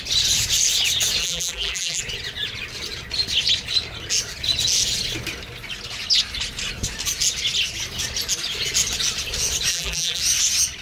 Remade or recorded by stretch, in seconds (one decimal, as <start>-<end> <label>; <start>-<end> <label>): 0.0-1.2 recorded; 1.2-2.0 remade; 2.0-9.7 recorded; 9.7-10.2 remade; 10.2-10.8 recorded